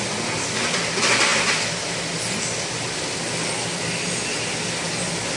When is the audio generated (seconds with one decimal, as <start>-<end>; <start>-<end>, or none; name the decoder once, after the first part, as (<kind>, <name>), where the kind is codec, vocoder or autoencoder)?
none